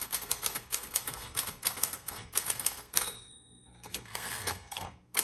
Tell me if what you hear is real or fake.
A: fake